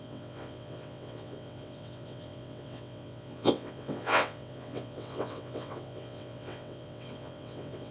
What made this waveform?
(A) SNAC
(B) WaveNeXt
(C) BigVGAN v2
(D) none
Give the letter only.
B